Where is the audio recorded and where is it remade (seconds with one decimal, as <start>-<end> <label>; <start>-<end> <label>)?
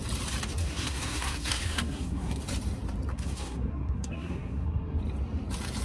0.0-0.6 recorded; 0.6-2.4 remade; 2.4-3.1 recorded; 3.1-5.0 remade; 5.0-5.8 recorded